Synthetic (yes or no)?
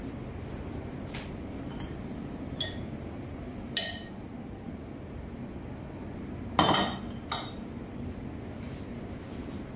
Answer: no